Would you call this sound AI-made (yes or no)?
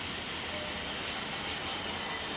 no